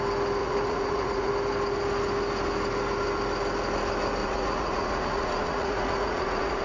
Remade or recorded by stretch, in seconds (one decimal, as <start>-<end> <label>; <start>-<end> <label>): 0.0-0.4 recorded; 0.4-1.3 remade; 1.3-4.2 recorded; 4.2-6.6 remade